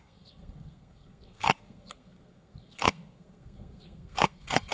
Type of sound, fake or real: fake